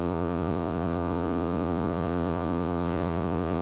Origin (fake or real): fake